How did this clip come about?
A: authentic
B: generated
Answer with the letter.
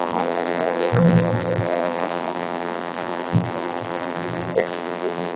B